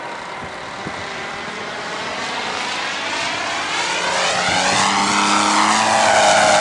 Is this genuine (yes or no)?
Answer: yes